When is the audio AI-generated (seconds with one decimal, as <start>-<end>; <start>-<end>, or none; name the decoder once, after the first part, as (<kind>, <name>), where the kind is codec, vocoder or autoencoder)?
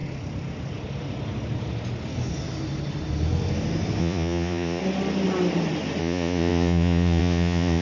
4.0-4.8 (vocoder, Vocos); 6.0-7.8